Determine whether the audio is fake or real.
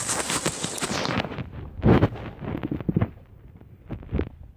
fake